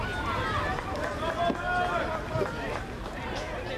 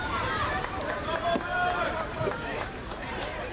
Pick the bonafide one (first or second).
first